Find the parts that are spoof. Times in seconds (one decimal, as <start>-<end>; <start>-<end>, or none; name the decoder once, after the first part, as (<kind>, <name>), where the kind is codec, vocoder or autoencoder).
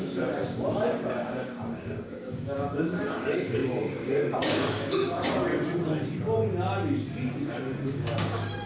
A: 0.0-5.5 (codec, DAC); 7.4-8.7